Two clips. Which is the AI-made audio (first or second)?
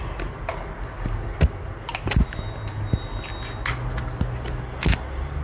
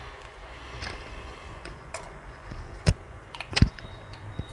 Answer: second